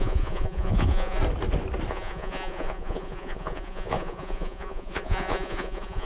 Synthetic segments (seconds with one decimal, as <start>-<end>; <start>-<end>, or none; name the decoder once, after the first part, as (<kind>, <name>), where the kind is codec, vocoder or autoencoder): 0.0-1.2 (vocoder, Vocos); 1.9-6.1